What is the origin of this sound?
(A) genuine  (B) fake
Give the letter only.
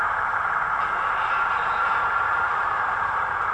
B